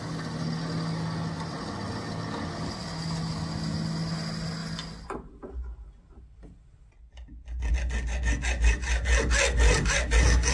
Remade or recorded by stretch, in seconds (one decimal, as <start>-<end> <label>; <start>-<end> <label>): 0.0-10.5 recorded